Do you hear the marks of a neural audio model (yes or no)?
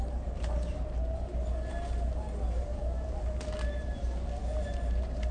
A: no